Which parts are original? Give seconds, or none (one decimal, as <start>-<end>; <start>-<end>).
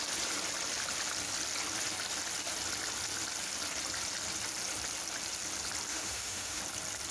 0.0-5.9; 6.6-7.1